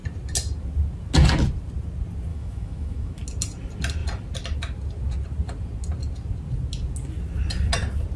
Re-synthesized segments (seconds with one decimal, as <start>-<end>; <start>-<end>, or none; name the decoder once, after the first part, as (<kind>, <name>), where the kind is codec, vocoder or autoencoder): 2.3-3.1 (autoencoder, DAC-VAE)